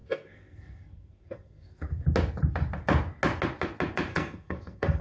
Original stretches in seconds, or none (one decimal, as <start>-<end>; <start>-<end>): 1.9-4.1